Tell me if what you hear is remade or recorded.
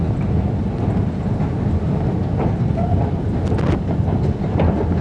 recorded